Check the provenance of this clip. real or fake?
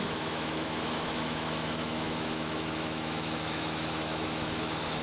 fake